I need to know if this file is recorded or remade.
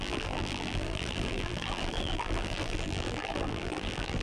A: remade